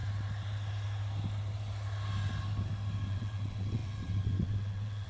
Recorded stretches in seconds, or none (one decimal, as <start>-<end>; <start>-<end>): 0.0-3.1